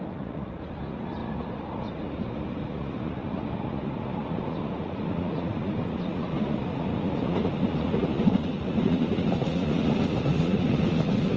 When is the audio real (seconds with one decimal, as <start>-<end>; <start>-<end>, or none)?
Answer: none